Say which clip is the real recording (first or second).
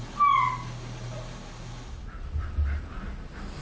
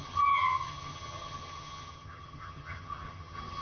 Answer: first